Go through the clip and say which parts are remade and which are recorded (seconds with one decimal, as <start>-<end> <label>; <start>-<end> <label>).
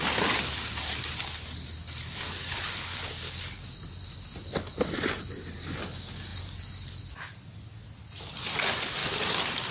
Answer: 0.0-0.7 recorded; 0.7-4.3 remade; 4.3-6.3 recorded; 6.3-7.0 remade; 7.0-9.0 recorded; 9.0-9.7 remade